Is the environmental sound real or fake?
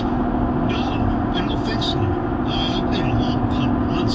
real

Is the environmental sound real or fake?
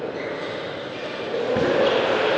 real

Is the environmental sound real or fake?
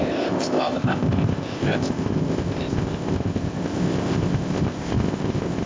fake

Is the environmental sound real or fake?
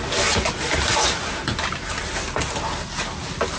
real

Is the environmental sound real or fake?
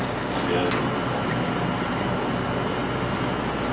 real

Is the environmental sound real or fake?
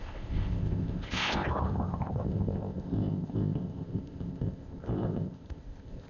fake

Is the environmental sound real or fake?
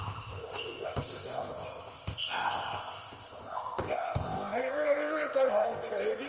fake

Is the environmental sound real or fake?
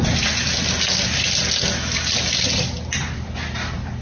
real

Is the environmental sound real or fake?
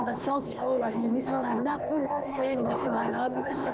fake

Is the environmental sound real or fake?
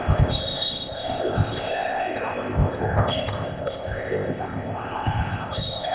fake